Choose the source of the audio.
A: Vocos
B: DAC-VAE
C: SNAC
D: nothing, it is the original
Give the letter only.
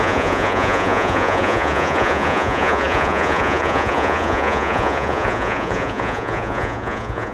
A